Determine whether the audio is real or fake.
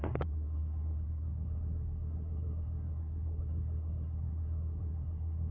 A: fake